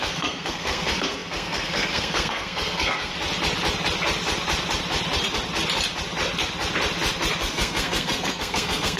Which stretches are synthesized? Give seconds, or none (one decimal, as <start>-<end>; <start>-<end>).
0.0-3.1; 7.4-9.0